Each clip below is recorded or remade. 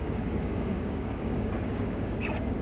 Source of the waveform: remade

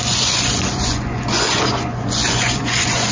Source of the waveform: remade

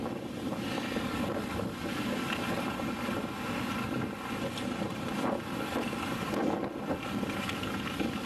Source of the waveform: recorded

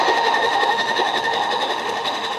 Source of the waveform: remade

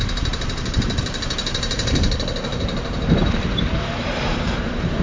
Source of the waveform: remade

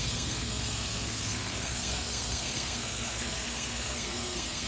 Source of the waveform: remade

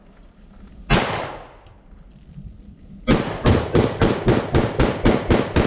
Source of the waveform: recorded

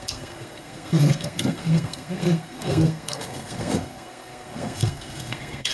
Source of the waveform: remade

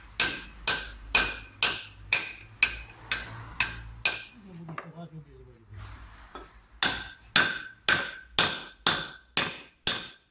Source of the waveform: recorded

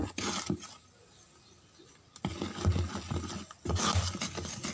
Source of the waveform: recorded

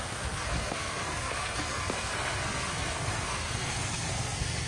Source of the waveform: remade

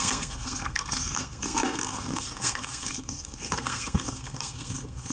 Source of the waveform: remade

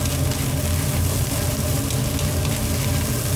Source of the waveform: recorded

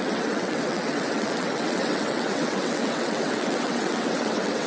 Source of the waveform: remade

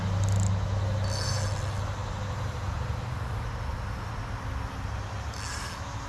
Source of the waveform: recorded